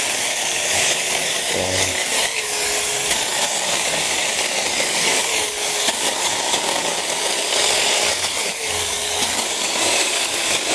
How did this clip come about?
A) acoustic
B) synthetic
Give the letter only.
B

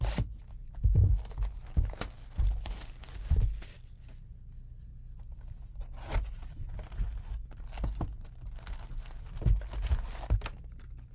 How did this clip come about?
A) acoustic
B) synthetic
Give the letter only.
A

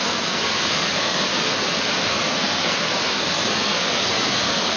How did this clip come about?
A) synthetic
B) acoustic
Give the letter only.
A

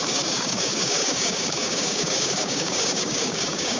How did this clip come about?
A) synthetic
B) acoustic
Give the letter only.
A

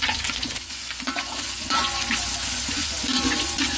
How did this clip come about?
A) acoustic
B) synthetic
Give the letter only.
B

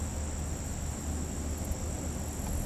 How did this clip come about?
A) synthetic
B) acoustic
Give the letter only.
B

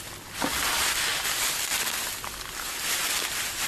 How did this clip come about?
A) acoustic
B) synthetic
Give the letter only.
A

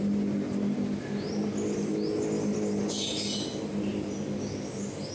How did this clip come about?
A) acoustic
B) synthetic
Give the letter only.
A